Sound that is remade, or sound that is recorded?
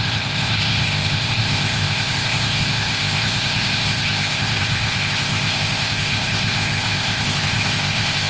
remade